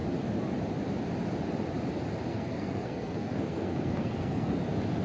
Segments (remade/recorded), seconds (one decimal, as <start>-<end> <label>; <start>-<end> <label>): 0.0-2.3 recorded; 2.3-4.5 remade; 4.5-5.0 recorded